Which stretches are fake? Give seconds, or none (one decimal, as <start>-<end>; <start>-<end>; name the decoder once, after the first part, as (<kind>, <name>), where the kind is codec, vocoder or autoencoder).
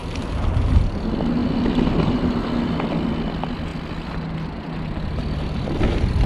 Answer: none